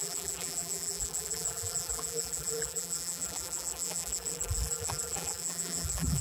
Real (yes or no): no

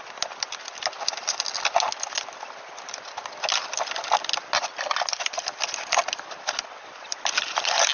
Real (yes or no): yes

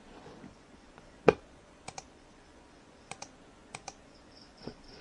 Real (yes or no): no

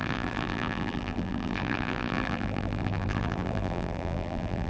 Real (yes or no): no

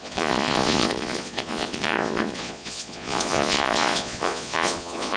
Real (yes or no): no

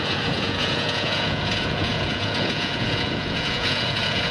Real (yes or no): no